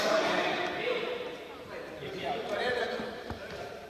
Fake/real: fake